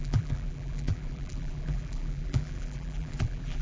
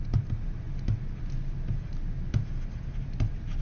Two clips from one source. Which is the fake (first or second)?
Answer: first